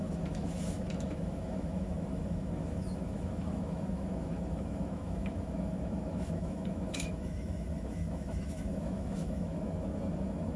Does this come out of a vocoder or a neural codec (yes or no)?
yes